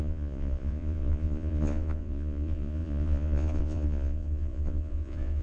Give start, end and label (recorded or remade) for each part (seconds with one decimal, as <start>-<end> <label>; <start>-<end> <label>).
0.0-5.4 remade